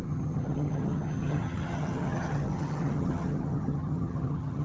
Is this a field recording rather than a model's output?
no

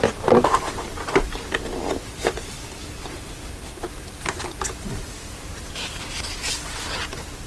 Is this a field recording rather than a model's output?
yes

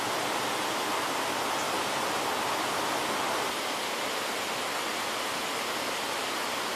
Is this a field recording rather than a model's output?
yes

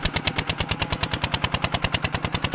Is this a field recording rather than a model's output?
yes